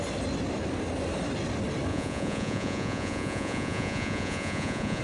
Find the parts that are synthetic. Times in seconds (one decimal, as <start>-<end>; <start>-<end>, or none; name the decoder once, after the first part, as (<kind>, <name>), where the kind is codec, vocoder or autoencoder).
1.9-5.0 (vocoder, Vocos)

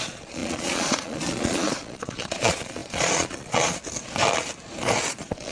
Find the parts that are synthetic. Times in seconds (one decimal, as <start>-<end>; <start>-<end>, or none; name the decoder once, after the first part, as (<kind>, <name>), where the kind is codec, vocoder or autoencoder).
0.0-3.8 (vocoder, Vocos); 5.1-5.5

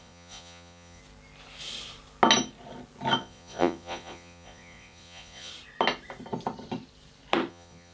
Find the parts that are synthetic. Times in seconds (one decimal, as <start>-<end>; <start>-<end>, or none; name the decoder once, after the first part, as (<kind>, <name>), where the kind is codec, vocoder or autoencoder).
0.0-1.0 (vocoder, Vocos); 3.2-5.5; 7.5-7.9

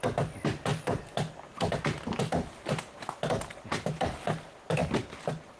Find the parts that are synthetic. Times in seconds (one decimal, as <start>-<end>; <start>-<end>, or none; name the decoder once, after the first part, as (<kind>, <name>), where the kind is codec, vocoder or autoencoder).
none

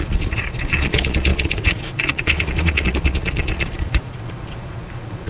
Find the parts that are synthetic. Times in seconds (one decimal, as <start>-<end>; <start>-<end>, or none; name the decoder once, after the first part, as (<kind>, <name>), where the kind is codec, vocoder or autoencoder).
0.0-5.3 (vocoder, Vocos)